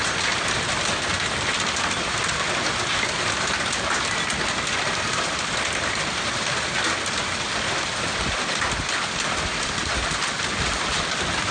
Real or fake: real